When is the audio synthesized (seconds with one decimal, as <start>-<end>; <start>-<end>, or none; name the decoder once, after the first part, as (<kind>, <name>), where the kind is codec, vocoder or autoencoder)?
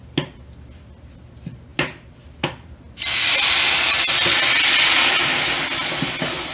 none